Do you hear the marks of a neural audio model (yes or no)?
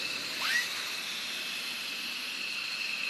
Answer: no